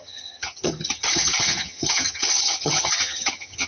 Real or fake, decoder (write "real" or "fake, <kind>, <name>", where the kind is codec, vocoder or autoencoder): fake, vocoder, HiFi-GAN